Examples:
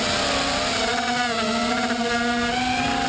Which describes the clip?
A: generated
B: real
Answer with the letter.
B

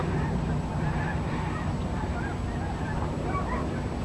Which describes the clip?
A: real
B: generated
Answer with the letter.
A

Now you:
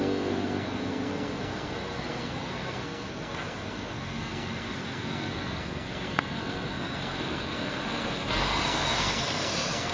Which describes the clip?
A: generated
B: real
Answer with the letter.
A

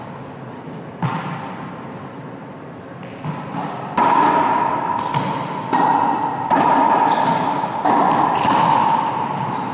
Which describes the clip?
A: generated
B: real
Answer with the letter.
B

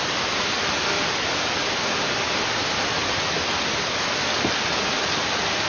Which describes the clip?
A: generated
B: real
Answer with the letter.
B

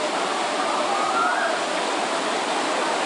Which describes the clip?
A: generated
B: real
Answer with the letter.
B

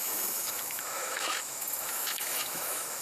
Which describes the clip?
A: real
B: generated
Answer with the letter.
B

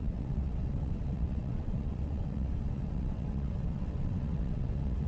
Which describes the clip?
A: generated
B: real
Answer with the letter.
A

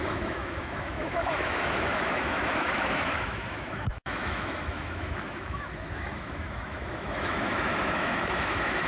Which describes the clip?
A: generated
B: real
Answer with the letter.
A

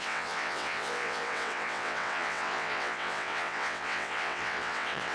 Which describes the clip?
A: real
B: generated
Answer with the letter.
B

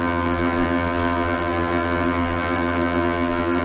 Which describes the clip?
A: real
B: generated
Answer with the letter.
B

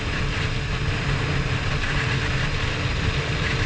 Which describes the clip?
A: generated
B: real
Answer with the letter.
B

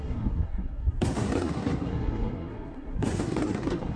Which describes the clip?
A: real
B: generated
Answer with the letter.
B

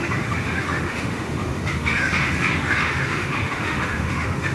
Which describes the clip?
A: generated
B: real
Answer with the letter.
A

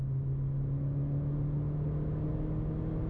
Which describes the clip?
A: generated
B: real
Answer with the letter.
B